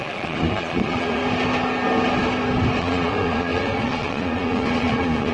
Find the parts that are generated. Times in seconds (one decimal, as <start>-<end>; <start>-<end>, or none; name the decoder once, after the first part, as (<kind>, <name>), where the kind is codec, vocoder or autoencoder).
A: 0.0-1.2 (vocoder, Vocos); 2.8-5.3